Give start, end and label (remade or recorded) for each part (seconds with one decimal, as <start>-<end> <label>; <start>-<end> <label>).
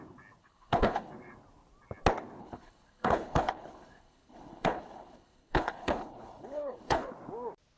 0.0-0.4 recorded; 0.4-1.1 remade; 1.1-2.4 recorded; 2.4-7.1 remade; 7.1-7.8 recorded